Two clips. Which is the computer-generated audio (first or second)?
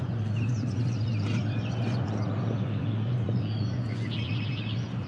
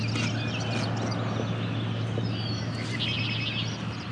first